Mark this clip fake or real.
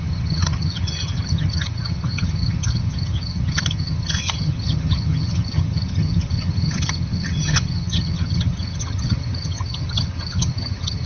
fake